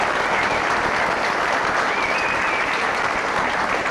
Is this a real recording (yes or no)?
yes